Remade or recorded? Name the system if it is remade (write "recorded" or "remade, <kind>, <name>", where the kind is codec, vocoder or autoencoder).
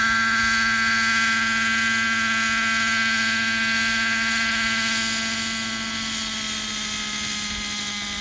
recorded